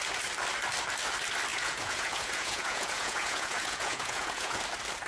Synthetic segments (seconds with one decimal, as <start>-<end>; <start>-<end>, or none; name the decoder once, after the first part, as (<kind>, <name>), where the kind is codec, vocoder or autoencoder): 1.5-4.6 (vocoder, Vocos)